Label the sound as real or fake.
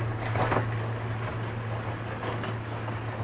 real